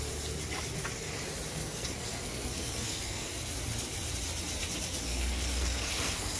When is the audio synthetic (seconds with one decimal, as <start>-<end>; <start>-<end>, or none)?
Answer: 1.5-3.3; 5.1-6.4